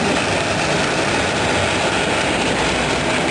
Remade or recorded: recorded